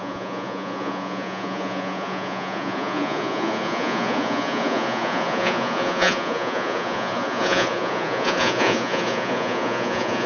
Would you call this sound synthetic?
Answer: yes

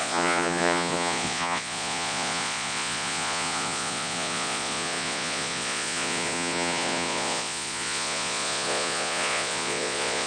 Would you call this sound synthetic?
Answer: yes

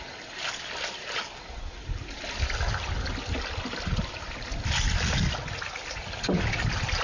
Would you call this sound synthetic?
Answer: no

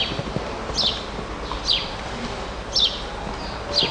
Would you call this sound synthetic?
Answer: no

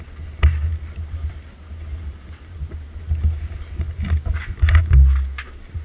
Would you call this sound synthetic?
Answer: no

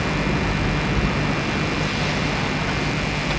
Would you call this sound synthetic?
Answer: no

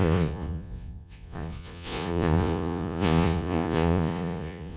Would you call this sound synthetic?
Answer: yes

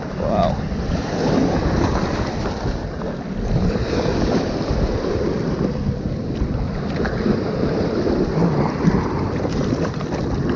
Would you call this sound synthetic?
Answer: no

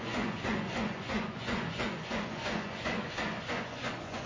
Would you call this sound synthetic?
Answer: yes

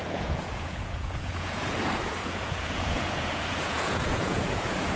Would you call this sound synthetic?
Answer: yes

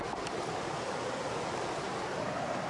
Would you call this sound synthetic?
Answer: no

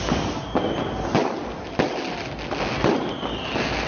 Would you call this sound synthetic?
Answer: no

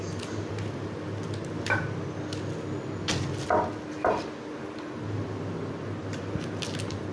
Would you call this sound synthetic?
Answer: no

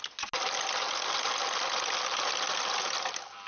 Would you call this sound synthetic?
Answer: no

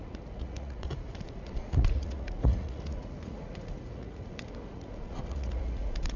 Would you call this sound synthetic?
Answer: yes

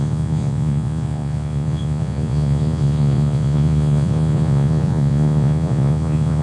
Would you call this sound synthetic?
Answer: yes